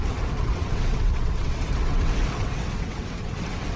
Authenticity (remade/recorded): remade